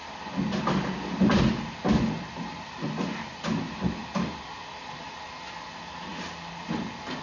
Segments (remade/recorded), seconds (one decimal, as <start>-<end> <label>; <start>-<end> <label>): 0.0-7.2 recorded